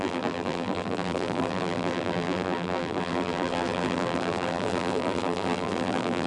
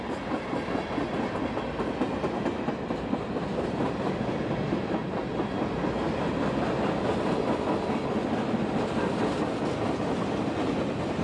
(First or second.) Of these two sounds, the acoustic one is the second